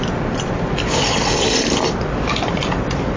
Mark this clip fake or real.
real